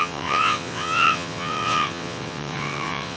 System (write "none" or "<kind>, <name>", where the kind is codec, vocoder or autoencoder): vocoder, WaveNeXt